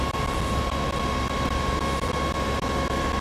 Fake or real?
real